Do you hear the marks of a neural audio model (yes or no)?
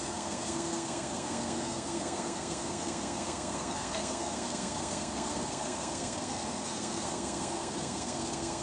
yes